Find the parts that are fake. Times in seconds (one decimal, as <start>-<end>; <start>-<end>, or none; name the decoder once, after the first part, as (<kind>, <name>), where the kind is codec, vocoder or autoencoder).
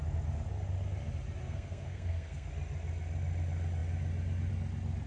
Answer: 1.4-2.5 (codec, SNAC)